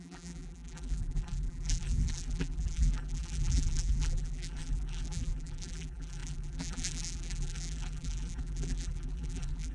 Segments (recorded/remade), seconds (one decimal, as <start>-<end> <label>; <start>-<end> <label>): 0.0-9.7 remade